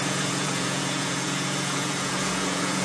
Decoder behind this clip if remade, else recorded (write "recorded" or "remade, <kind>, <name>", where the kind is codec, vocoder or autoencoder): remade, vocoder, Vocos